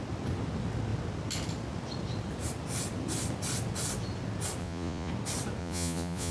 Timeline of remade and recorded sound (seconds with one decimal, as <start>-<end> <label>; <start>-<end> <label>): 0.0-4.6 recorded; 4.6-5.1 remade; 5.1-5.6 recorded; 5.6-6.3 remade